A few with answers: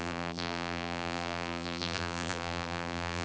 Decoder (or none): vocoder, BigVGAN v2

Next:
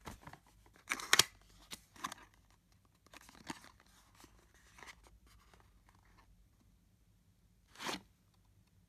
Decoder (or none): none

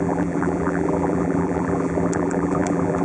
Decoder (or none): vocoder, BigVGAN v2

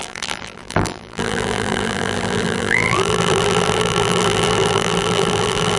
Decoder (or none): vocoder, BigVGAN v2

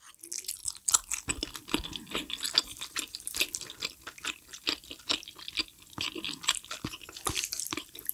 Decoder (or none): none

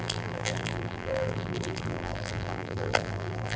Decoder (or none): vocoder, BigVGAN v2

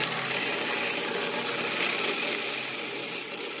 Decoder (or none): none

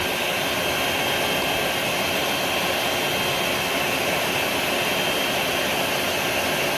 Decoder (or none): none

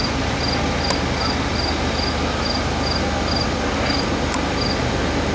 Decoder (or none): none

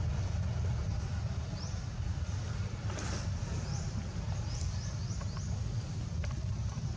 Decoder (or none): vocoder, BigVGAN v2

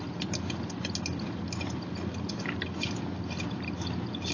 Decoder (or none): none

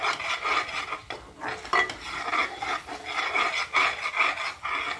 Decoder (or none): none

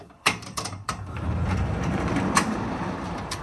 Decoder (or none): vocoder, BigVGAN v2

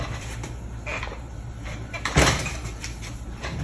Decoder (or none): vocoder, BigVGAN v2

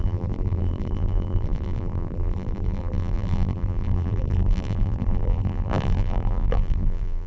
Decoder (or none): vocoder, BigVGAN v2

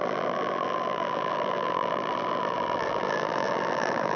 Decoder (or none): vocoder, BigVGAN v2